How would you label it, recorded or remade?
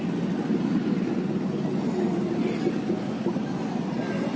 recorded